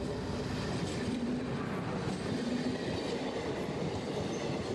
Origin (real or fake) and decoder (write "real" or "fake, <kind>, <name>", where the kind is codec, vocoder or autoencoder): real